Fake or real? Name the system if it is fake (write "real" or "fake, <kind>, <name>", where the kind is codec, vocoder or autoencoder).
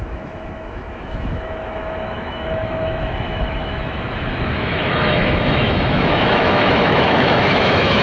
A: fake, autoencoder, DAC-VAE